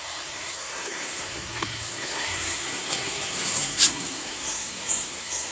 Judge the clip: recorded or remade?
remade